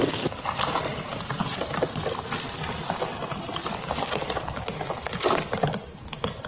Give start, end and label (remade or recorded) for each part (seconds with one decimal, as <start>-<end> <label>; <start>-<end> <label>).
0.0-6.5 recorded